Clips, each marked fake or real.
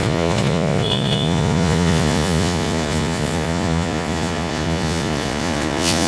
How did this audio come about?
fake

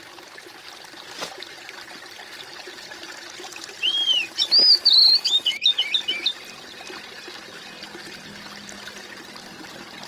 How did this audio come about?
real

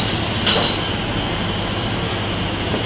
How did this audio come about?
real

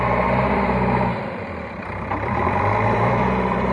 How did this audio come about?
fake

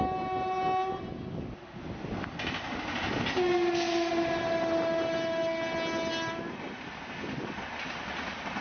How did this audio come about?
real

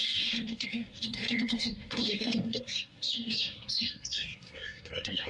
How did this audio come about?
fake